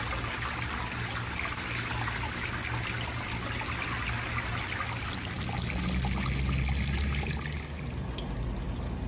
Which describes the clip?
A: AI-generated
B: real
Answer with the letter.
B